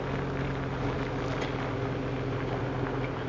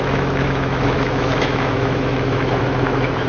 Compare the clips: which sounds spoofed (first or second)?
second